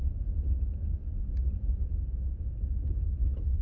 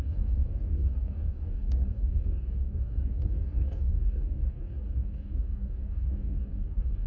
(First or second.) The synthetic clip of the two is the second